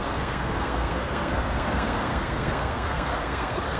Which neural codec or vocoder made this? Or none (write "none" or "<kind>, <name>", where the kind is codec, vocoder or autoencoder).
codec, SNAC